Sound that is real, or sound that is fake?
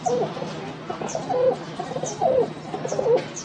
real